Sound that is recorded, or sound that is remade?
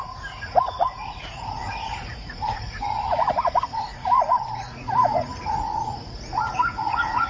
remade